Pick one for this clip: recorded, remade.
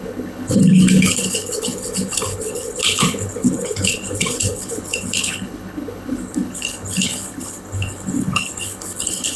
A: remade